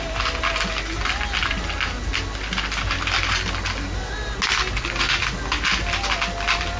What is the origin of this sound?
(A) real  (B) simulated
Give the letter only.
A